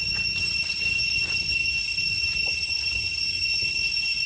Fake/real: real